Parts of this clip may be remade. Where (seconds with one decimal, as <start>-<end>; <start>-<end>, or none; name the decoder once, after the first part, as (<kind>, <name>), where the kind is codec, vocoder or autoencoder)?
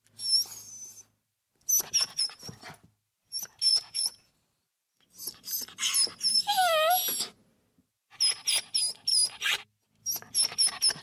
3.7-4.3 (vocoder, Vocos)